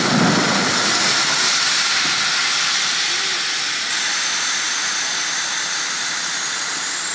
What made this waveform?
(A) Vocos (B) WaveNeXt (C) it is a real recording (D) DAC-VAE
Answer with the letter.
C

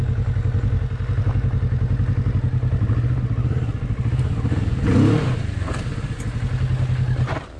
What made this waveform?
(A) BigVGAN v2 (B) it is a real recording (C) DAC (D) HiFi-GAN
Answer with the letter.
B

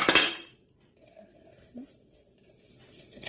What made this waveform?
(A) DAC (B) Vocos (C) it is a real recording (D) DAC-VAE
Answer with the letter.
C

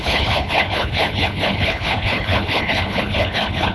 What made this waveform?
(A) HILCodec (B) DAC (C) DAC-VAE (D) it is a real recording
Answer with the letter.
A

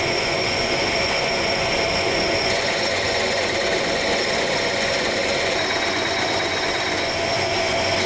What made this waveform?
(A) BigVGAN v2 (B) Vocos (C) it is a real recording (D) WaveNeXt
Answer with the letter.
B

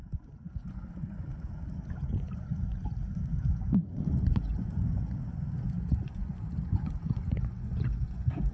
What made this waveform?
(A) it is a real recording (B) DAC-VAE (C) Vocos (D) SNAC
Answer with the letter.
C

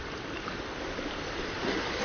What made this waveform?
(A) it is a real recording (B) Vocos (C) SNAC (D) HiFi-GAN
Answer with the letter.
A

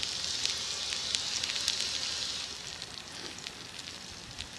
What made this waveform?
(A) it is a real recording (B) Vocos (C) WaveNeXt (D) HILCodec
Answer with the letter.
A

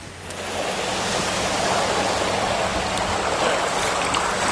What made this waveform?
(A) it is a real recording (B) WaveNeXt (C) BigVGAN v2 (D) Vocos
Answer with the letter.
A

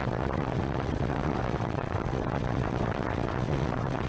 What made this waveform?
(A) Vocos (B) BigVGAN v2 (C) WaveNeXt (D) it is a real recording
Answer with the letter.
C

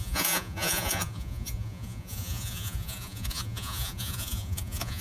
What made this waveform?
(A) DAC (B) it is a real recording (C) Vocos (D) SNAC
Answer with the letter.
C